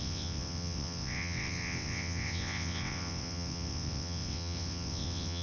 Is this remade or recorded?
remade